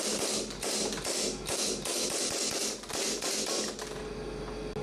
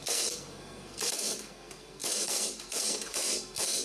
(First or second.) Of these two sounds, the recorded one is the first